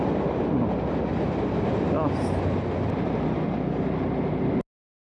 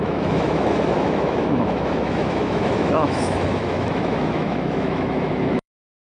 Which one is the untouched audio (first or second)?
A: first